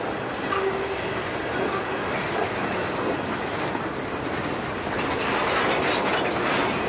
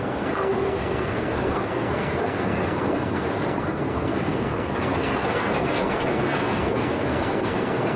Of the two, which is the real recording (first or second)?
first